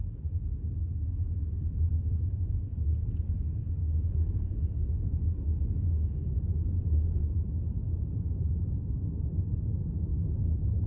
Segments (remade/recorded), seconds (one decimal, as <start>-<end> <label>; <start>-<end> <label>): 0.0-10.9 recorded